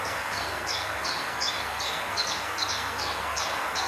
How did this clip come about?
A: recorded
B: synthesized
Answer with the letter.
B